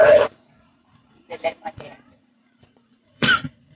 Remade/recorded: remade